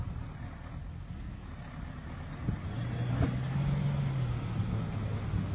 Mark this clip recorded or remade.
recorded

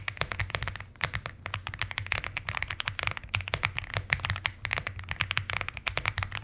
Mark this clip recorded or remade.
recorded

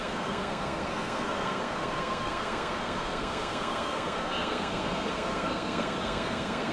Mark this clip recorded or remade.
remade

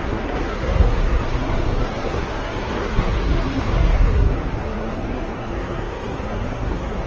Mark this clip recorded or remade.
remade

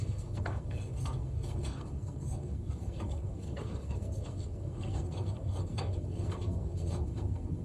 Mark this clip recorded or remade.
remade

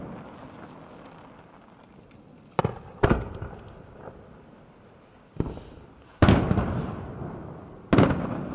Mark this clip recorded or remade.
recorded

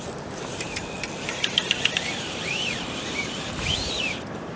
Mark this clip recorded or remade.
remade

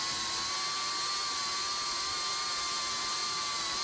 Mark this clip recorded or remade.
recorded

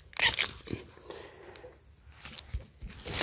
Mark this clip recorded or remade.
recorded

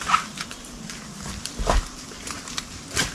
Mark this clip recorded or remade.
recorded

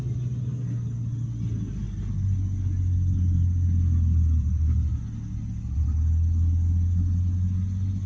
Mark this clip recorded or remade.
recorded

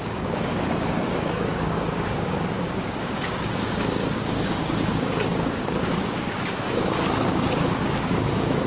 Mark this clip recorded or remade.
remade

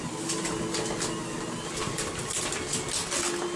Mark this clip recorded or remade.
recorded